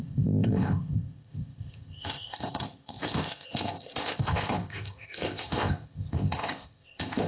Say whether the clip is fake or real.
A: fake